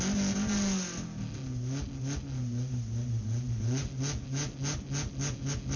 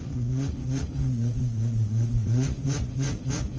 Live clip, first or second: first